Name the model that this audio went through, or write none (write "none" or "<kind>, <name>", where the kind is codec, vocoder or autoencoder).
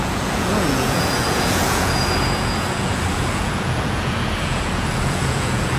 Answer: vocoder, Vocos